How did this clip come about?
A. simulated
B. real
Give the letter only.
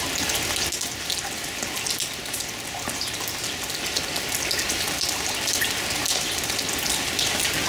B